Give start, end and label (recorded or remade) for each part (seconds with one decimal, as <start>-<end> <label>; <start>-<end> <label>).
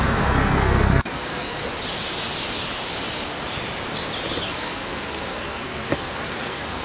0.0-1.6 remade; 1.6-4.5 recorded; 4.5-6.8 remade